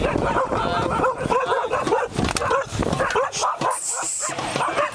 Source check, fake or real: real